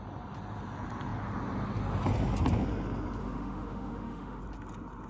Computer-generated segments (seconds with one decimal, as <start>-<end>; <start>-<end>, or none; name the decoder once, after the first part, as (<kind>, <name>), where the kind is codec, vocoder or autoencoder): 3.2-4.4 (autoencoder, DAC-VAE)